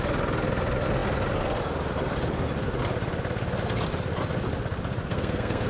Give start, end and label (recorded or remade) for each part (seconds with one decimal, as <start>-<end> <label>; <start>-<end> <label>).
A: 0.0-5.1 recorded; 5.1-5.7 remade